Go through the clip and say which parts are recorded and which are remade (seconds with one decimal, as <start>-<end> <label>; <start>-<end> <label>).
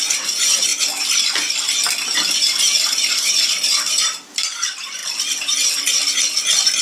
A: 0.0-0.7 remade; 0.7-2.3 recorded; 2.3-5.0 remade; 5.0-6.8 recorded